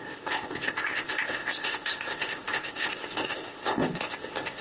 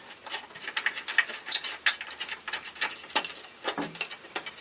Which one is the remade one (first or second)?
first